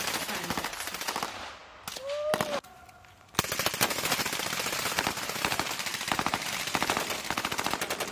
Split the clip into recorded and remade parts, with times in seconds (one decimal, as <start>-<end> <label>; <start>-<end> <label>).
0.0-5.9 recorded; 5.9-6.5 remade; 6.5-8.1 recorded

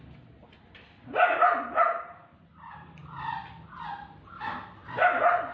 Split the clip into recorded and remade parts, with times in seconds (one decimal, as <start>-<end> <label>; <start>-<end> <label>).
0.0-3.0 remade; 3.0-4.5 recorded; 4.5-5.5 remade